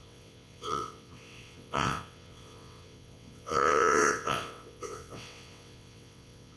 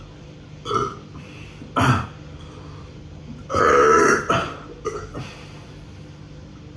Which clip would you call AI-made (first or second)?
first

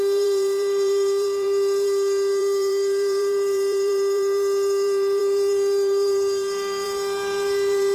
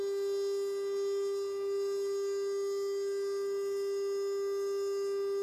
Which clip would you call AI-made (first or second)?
first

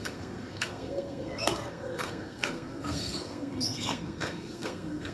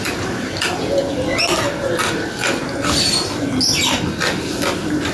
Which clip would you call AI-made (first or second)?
first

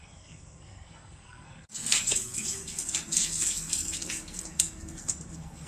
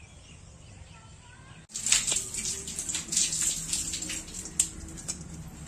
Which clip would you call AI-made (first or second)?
first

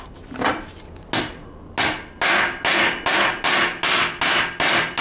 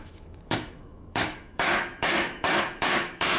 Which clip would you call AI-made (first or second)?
second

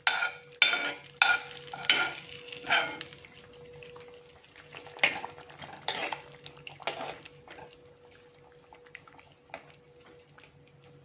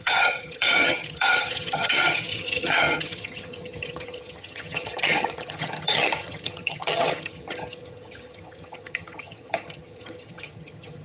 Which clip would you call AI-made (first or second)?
second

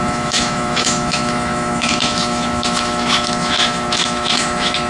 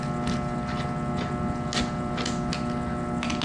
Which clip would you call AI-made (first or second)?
first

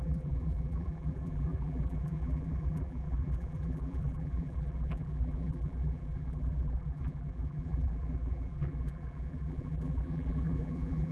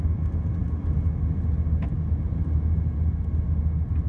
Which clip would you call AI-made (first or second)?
first